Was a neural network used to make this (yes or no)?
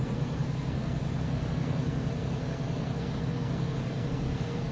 yes